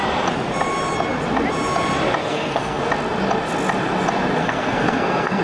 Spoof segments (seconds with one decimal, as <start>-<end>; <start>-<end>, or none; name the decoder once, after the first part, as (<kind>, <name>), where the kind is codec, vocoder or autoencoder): 2.2-2.8 (codec, SNAC); 4.4-5.4